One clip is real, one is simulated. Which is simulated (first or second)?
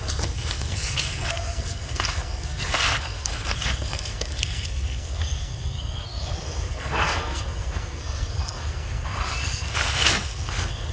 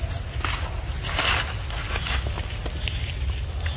first